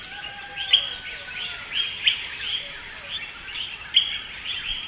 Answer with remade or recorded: recorded